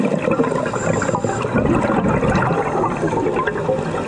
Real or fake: real